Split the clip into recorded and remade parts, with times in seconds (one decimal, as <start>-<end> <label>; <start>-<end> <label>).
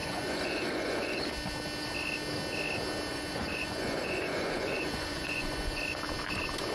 0.0-1.2 remade; 1.2-3.1 recorded; 3.1-5.8 remade; 5.8-6.7 recorded